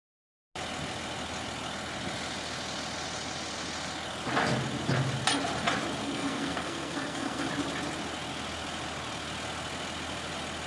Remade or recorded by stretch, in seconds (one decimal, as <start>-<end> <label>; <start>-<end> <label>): 0.0-6.0 recorded; 6.0-7.5 remade; 7.5-10.7 recorded